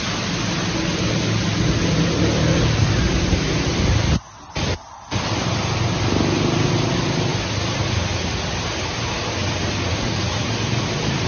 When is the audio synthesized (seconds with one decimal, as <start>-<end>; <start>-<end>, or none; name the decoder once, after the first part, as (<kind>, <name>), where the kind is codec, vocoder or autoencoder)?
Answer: none